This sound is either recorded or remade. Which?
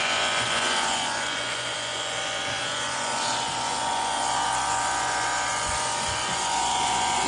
remade